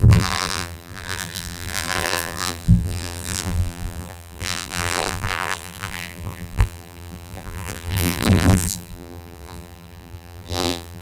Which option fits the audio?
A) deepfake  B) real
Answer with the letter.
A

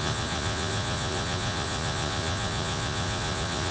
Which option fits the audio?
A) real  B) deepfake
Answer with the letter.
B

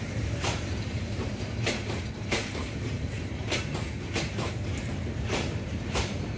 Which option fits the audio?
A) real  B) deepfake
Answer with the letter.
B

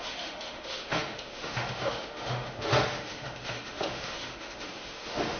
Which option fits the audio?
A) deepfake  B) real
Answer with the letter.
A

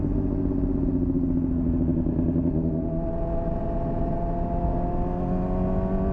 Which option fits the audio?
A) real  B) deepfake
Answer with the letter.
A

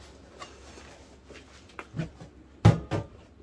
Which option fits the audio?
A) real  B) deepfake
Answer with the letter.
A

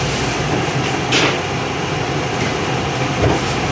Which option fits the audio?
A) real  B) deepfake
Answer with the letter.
A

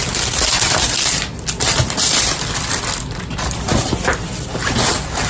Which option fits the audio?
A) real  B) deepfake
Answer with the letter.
A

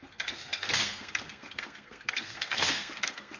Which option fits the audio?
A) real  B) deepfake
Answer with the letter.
B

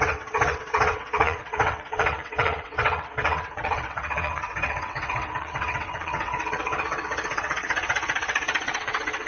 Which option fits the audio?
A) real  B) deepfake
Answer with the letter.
B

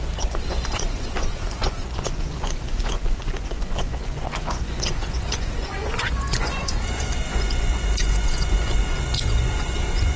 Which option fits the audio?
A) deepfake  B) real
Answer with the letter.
A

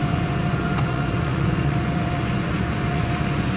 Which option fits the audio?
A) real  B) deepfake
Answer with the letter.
B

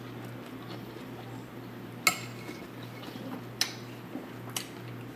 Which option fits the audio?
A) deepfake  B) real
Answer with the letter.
B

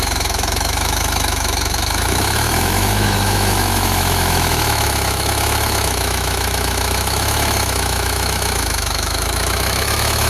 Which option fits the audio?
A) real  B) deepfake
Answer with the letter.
B